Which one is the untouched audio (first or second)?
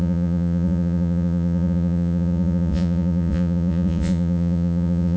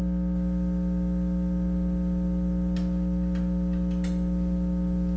second